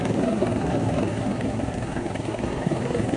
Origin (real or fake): fake